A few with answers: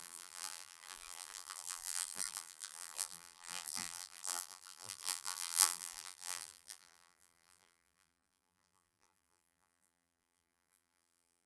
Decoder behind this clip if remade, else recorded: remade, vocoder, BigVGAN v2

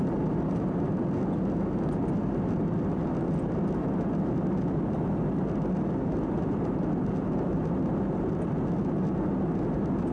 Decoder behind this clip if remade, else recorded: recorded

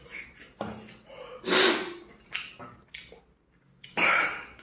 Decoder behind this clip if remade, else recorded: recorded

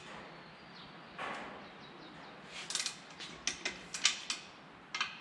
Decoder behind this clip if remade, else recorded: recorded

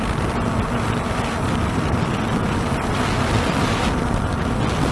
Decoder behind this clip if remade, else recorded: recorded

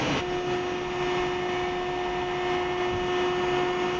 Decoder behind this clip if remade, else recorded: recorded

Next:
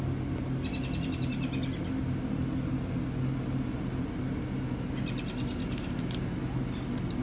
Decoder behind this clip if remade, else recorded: recorded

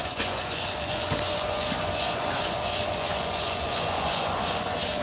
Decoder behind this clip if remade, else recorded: remade, vocoder, Vocos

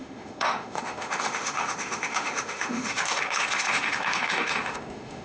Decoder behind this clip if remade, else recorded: remade, autoencoder, DAC-VAE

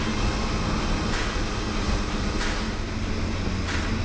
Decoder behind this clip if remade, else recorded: recorded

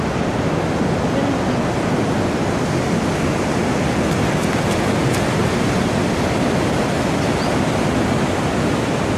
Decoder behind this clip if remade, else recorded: recorded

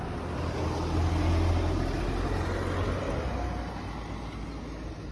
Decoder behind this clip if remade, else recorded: recorded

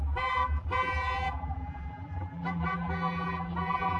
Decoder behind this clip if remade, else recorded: remade, vocoder, BigVGAN v2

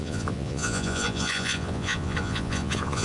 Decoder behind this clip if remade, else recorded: remade, vocoder, Vocos